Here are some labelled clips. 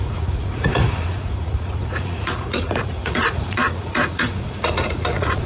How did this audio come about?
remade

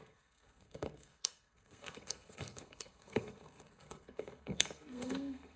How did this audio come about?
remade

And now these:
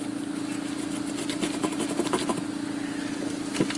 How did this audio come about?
recorded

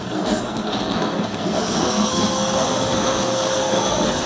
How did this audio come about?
remade